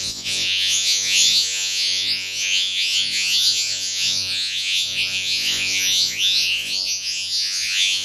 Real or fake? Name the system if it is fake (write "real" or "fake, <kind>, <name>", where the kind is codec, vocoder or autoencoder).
fake, vocoder, Vocos